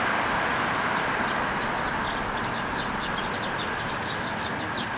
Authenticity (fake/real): real